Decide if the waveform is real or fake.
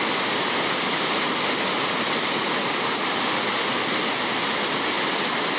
real